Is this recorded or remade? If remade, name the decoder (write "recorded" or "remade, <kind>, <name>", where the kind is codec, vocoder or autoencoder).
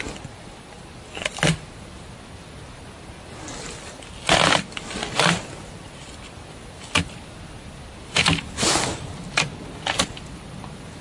recorded